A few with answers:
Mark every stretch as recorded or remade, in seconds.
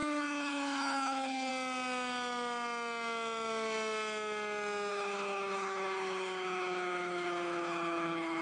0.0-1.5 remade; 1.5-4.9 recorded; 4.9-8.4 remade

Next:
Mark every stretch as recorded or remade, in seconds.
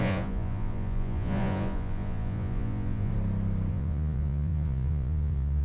0.0-3.1 remade; 3.1-3.7 recorded; 3.7-5.6 remade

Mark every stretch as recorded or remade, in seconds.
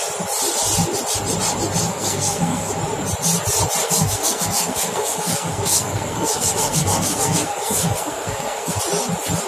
0.0-1.9 recorded; 1.9-2.7 remade; 2.7-3.8 recorded; 3.8-8.8 remade; 8.8-9.5 recorded